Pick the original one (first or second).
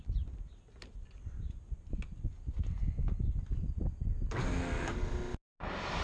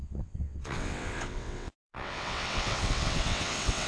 first